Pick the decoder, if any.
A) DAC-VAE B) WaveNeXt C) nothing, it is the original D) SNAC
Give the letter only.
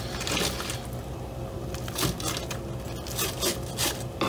C